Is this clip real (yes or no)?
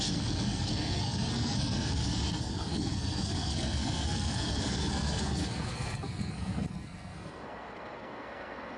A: no